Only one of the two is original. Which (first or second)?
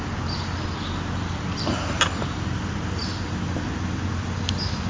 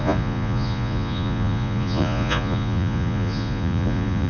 first